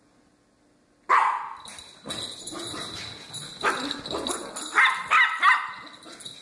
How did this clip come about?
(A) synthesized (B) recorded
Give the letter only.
B